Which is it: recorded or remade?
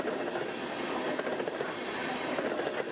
recorded